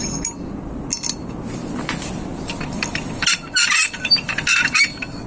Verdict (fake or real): real